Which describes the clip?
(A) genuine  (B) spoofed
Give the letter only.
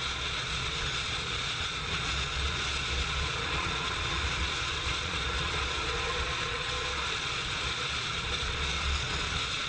B